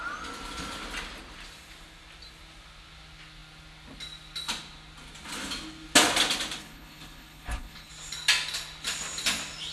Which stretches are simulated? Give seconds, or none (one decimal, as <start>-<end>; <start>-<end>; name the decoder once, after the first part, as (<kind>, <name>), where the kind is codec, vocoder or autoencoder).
6.6-7.9 (codec, HILCodec)